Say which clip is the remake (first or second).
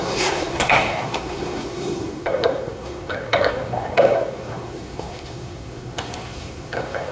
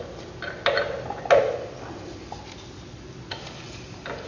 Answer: first